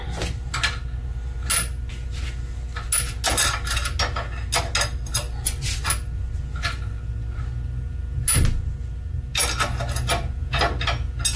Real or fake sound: real